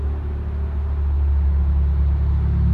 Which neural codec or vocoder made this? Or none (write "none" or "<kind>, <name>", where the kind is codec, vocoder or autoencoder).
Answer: none